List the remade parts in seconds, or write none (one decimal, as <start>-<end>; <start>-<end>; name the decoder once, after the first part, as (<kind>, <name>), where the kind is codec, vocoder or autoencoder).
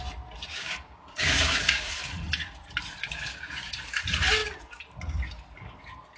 0.5-1.9 (codec, DAC); 3.0-3.7